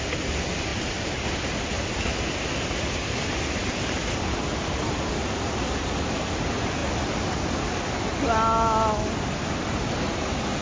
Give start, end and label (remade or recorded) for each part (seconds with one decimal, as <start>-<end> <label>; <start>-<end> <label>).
0.0-10.6 recorded